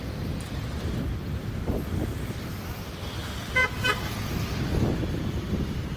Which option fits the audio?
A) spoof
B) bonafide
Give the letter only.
B